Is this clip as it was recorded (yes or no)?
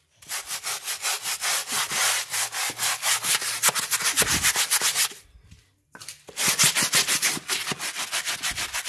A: yes